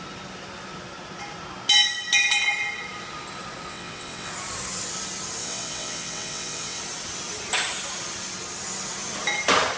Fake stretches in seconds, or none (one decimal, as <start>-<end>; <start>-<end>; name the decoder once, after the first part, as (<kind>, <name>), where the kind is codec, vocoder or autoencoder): 3.7-4.3 (vocoder, WaveNeXt); 5.4-6.8